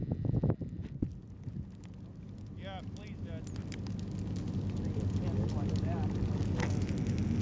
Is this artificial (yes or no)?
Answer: no